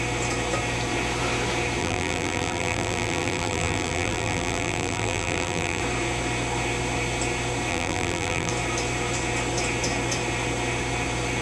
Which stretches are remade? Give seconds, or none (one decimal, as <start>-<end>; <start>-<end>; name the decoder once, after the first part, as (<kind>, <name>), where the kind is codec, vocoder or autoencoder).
1.8-5.8 (vocoder, BigVGAN v2); 7.7-8.5